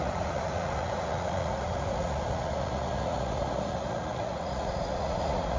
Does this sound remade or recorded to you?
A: remade